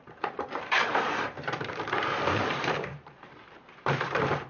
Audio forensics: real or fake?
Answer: fake